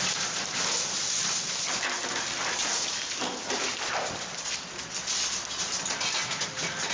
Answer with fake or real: real